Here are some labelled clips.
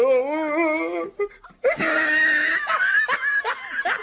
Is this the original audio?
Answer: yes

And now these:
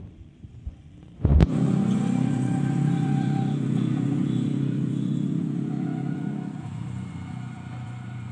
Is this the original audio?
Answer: no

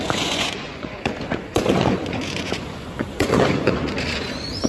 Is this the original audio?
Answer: no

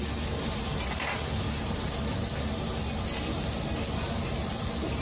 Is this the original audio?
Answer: yes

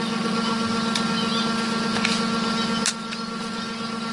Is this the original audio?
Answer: yes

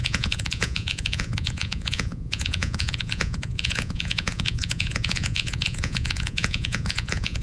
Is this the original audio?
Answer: no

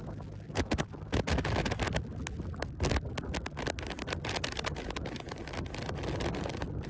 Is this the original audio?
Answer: yes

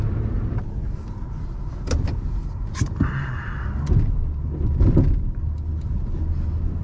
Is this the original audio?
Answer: yes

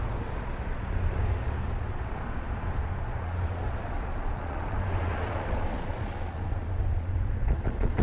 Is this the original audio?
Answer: no